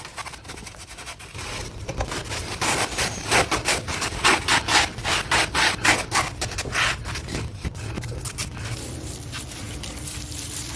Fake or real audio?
fake